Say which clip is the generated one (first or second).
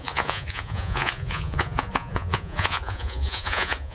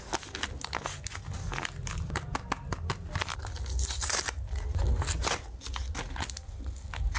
first